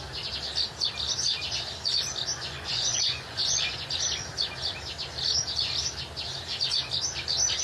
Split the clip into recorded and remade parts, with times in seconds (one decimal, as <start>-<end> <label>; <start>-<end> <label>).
0.0-2.3 recorded; 2.3-3.9 remade; 3.9-7.6 recorded

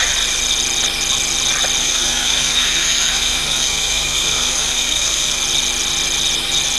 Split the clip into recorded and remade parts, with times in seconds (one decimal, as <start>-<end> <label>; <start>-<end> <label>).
0.0-1.8 recorded; 1.8-5.4 remade; 5.4-6.8 recorded

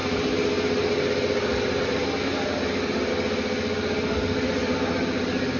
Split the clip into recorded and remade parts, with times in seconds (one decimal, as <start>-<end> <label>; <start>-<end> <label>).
0.0-5.6 recorded

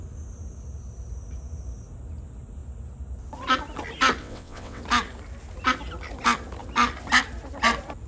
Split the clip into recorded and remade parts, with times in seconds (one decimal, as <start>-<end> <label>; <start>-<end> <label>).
0.0-4.2 recorded; 4.2-4.8 remade; 4.8-8.1 recorded

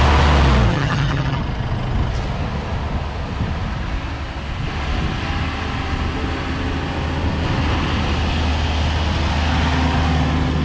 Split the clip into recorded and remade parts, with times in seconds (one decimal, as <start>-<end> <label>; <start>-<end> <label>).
0.0-0.7 recorded; 0.7-1.4 remade; 1.4-10.6 recorded

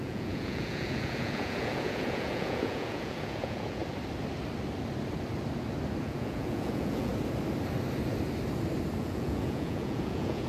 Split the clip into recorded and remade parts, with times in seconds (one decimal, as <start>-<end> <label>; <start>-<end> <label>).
0.0-3.8 remade; 3.8-6.0 recorded; 6.0-7.1 remade; 7.1-9.0 recorded; 9.0-10.5 remade

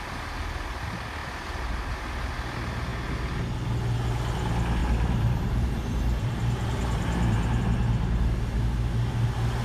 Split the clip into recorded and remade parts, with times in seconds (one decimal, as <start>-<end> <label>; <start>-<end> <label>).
0.0-4.8 recorded; 4.8-7.6 remade; 7.6-9.6 recorded